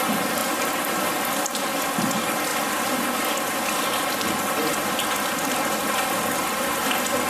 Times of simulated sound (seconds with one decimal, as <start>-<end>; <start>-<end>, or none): none